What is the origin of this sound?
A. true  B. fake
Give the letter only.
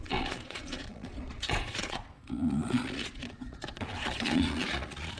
B